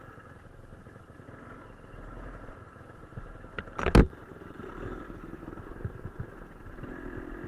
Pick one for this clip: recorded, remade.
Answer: recorded